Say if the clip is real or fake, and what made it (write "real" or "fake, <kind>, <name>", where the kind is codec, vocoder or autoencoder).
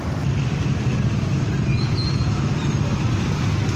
real